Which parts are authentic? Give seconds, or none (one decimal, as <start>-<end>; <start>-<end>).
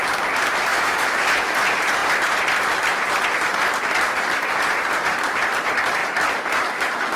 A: 0.0-0.7; 1.5-7.2